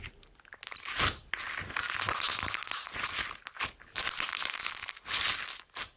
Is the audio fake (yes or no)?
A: no